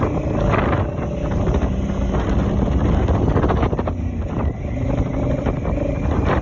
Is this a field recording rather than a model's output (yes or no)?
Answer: yes